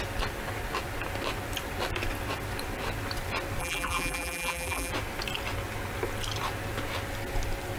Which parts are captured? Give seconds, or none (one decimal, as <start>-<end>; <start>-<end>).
0.0-3.6; 4.9-7.8